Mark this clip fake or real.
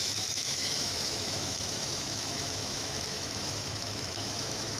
fake